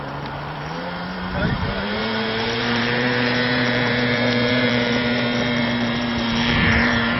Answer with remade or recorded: remade